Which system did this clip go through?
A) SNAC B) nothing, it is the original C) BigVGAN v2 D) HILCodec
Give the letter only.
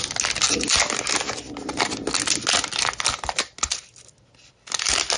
B